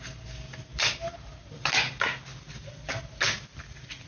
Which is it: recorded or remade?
recorded